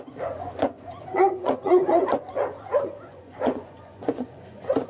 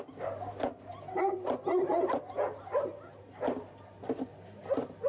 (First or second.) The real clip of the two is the second